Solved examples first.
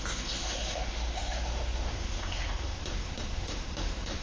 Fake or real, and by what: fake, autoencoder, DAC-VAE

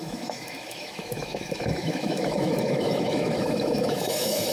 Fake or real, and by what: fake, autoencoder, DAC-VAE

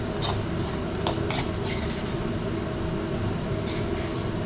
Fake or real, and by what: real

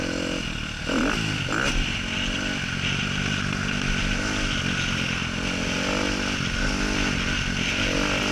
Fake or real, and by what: real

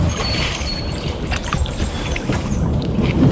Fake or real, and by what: fake, vocoder, BigVGAN v2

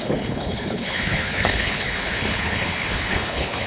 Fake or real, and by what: fake, codec, HILCodec